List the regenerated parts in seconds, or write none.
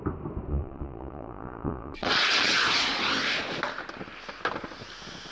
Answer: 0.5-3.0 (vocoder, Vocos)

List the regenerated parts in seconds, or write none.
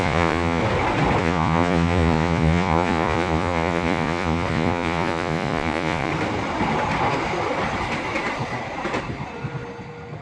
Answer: 0.0-0.6 (vocoder, Vocos); 1.2-6.1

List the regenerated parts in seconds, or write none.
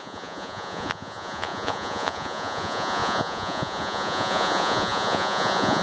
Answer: 0.0-5.8 (vocoder, Vocos)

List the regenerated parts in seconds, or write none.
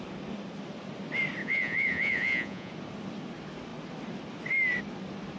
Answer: 1.4-2.7 (vocoder, Vocos)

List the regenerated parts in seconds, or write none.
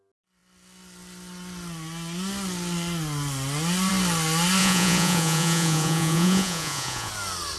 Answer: 4.6-7.1 (vocoder, Vocos)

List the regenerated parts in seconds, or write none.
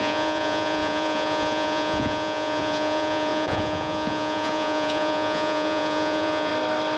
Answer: 0.0-6.5 (vocoder, Vocos)